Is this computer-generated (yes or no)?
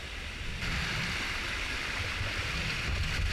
no